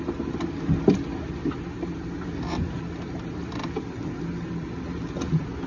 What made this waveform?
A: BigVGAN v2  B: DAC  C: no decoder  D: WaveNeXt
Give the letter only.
C